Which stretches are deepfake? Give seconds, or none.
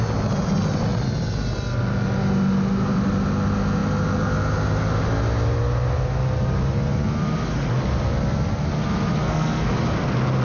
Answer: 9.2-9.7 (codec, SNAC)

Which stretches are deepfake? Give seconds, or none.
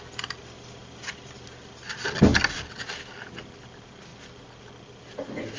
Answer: none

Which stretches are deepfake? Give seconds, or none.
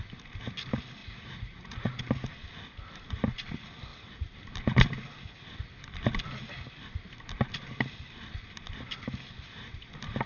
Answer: 1.0-2.0 (vocoder, Vocos)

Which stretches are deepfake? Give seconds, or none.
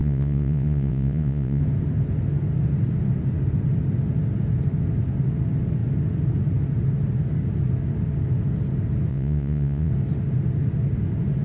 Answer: 0.0-1.6 (vocoder, Vocos); 9.1-9.9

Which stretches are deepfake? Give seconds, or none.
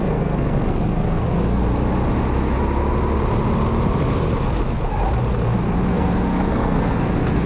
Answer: 0.0-1.6 (codec, SNAC); 5.9-7.5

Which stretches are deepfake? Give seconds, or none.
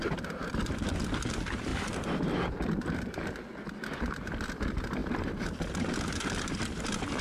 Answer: none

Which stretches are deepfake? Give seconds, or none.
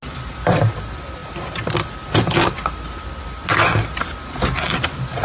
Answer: none